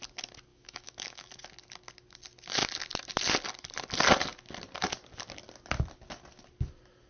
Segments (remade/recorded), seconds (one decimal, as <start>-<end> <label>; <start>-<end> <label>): 0.0-0.5 recorded; 0.5-1.3 remade; 1.3-7.1 recorded